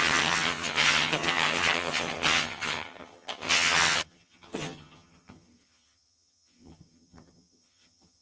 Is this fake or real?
fake